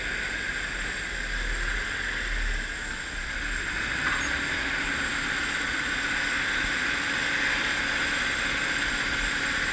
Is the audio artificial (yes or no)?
no